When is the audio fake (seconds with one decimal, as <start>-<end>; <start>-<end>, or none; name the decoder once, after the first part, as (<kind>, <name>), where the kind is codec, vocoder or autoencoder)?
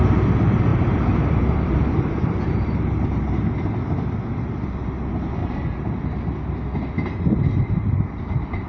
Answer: 0.7-3.3 (vocoder, BigVGAN v2); 5.4-6.0